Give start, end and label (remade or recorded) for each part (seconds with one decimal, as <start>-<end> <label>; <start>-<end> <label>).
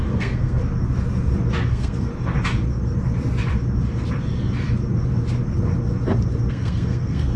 0.0-0.6 remade; 0.6-1.7 recorded; 1.7-2.1 remade; 2.1-6.5 recorded; 6.5-7.4 remade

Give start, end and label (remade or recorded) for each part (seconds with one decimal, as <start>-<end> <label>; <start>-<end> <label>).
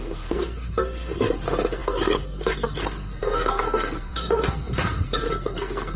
0.0-6.0 remade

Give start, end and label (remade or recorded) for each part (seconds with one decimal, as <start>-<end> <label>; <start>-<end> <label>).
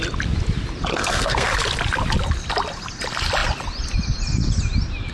0.0-0.9 recorded; 0.9-1.5 remade; 1.5-5.1 recorded